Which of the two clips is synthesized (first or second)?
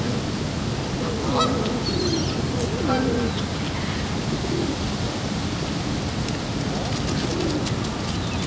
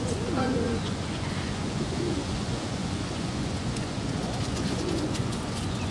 second